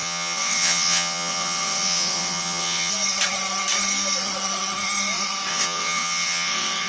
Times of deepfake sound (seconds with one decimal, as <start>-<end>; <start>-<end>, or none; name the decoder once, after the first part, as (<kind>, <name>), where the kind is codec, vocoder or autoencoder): 0.0-2.9 (vocoder, WaveNeXt); 5.5-6.9